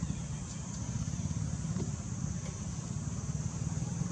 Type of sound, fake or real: real